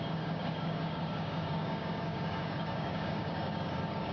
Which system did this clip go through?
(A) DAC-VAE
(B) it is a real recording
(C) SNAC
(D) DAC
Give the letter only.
D